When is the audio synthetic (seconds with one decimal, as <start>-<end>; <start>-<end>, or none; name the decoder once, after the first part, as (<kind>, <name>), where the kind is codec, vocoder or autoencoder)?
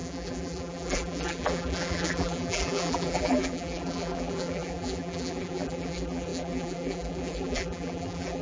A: 0.0-8.4 (vocoder, BigVGAN v2)